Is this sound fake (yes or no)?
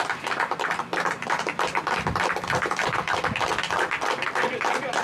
no